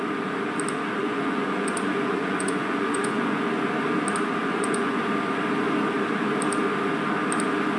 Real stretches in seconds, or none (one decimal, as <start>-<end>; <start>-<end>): 0.0-1.0; 3.4-4.4; 5.0-7.8